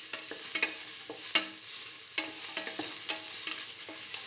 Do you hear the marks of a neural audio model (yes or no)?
no